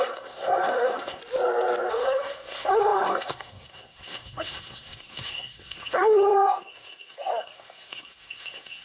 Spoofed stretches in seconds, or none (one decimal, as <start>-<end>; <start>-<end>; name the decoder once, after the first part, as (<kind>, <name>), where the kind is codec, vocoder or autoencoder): 0.0-1.2 (codec, SNAC); 1.9-8.8